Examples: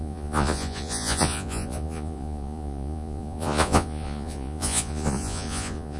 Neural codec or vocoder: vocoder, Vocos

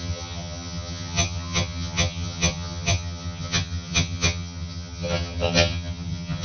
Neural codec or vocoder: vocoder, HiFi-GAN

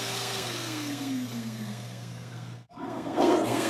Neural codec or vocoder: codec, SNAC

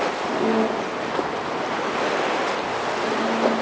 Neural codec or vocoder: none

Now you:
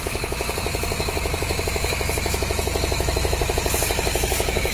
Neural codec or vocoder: autoencoder, DAC-VAE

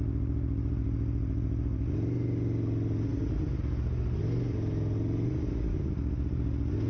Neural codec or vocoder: none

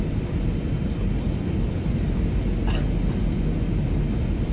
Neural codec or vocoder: none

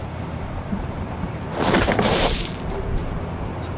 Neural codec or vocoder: vocoder, BigVGAN v2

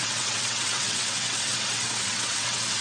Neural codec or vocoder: vocoder, WaveNeXt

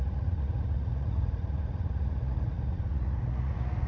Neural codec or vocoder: vocoder, Vocos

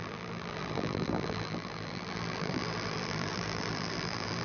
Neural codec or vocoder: vocoder, BigVGAN v2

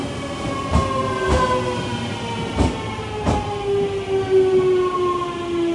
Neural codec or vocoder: none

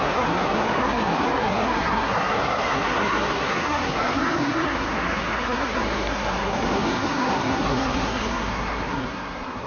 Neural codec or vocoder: codec, SNAC